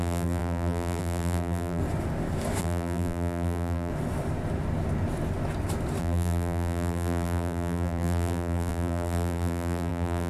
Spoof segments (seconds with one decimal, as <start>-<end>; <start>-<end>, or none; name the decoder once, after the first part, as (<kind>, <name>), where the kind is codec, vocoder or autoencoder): 0.0-1.8 (vocoder, BigVGAN v2); 2.6-3.9; 6.0-10.3